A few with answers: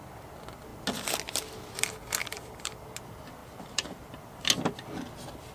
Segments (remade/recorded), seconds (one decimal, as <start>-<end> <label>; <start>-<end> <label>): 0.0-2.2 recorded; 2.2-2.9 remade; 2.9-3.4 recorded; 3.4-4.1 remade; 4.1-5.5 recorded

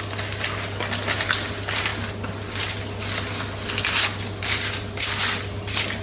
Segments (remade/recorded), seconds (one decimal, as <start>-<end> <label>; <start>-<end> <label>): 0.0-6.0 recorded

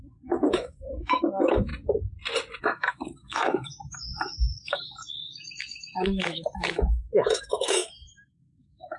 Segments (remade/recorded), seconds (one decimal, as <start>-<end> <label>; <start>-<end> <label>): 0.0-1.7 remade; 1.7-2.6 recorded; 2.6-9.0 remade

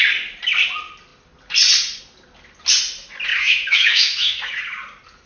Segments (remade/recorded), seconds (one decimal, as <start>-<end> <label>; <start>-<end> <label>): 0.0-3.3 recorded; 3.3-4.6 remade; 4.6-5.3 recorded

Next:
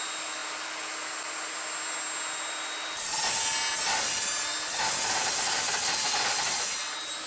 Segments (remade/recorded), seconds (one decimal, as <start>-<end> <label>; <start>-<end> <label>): 0.0-7.3 recorded

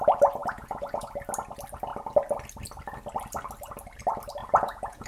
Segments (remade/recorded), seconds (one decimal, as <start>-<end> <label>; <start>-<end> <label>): 0.0-0.4 recorded; 0.4-1.1 remade; 1.1-4.4 recorded; 4.4-5.1 remade

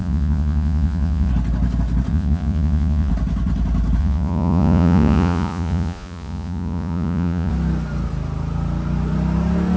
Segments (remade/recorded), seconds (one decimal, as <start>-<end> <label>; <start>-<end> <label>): 0.0-1.3 remade; 1.3-2.1 recorded; 2.1-3.1 remade; 3.1-4.0 recorded; 4.0-7.5 remade; 7.5-9.8 recorded